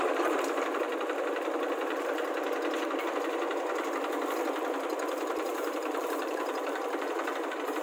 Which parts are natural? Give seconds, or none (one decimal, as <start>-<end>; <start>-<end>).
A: 0.9-5.5